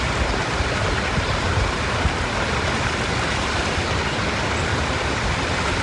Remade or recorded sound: recorded